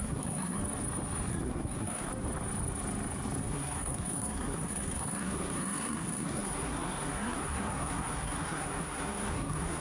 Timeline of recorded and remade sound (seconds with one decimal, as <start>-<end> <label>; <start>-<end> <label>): 0.0-0.6 remade; 0.6-1.3 recorded; 1.3-2.1 remade; 2.1-3.4 recorded; 3.4-9.8 remade